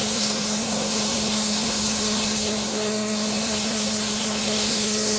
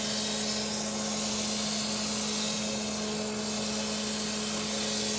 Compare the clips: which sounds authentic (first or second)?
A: second